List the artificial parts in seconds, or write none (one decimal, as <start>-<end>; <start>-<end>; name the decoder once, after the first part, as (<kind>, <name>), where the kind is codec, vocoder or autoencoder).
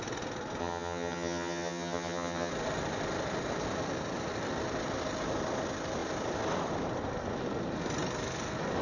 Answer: 0.6-2.5 (vocoder, HiFi-GAN)